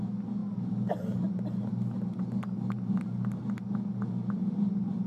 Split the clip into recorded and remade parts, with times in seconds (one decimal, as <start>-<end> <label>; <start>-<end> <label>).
0.0-5.1 recorded